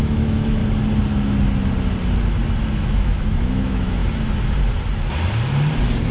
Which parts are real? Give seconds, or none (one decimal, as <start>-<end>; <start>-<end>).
0.6-2.7; 4.0-6.1